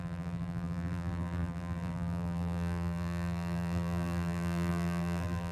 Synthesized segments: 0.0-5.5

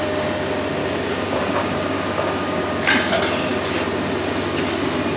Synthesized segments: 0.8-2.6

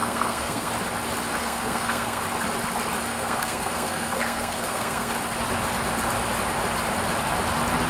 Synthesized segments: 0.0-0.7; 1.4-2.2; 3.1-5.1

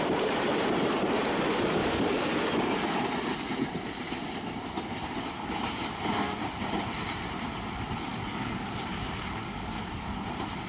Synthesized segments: 1.8-2.3; 8.1-9.8

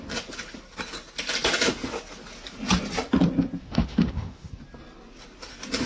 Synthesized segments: 3.6-4.5

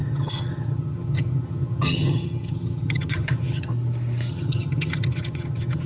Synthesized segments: 0.0-3.7; 4.3-5.9